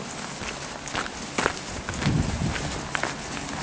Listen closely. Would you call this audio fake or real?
real